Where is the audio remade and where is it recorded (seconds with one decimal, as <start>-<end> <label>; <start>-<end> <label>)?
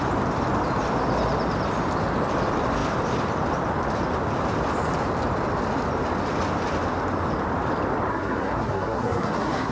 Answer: 0.0-8.1 recorded; 8.1-9.7 remade